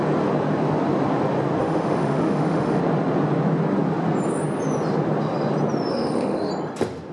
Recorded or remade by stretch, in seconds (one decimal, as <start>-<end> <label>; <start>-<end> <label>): 0.0-1.6 recorded; 1.6-2.8 remade; 2.8-5.9 recorded; 5.9-6.5 remade; 6.5-7.1 recorded